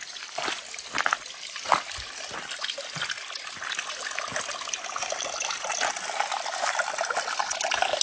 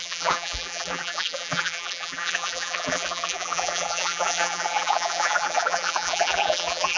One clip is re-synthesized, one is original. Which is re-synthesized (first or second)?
second